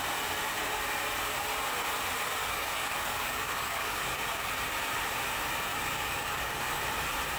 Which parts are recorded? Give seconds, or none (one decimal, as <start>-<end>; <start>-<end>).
0.0-2.4; 4.5-5.7; 6.8-7.4